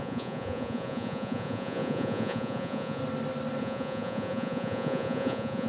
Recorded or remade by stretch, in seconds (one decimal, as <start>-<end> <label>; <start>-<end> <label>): 0.0-3.0 remade; 3.0-3.6 recorded; 3.6-5.7 remade

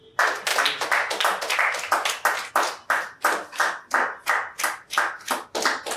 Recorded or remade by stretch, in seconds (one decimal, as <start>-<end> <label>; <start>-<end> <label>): 0.0-6.0 recorded